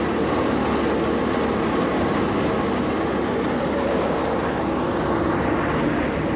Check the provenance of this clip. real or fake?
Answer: real